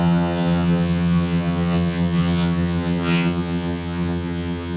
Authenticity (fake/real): fake